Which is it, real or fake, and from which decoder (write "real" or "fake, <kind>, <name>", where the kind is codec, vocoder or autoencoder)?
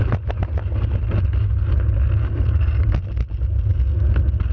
real